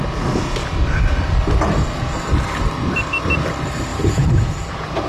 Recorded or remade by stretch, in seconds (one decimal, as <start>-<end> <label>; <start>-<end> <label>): 0.0-3.9 recorded; 3.9-5.1 remade